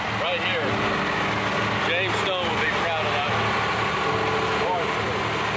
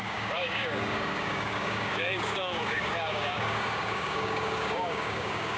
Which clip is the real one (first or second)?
first